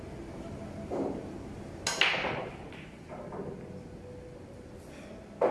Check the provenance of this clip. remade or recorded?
recorded